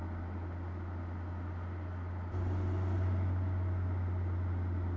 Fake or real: real